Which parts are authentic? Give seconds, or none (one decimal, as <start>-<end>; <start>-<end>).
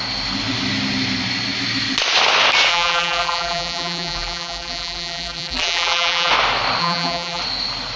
0.0-2.7; 6.3-6.8; 7.4-8.0